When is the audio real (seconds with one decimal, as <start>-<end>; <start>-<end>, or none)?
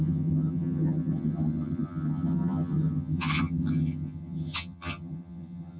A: none